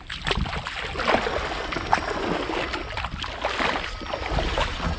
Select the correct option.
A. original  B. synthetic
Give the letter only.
A